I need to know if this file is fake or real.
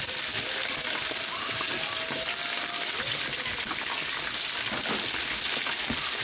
real